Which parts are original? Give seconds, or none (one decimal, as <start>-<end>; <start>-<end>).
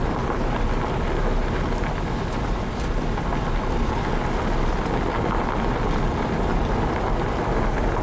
0.0-8.0